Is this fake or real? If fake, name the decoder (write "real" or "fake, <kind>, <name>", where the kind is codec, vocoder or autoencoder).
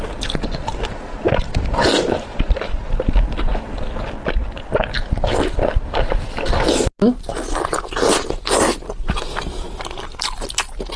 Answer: real